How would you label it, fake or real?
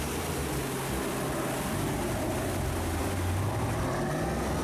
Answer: real